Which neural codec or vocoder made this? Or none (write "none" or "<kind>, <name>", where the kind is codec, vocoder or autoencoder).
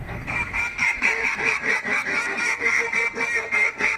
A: codec, SNAC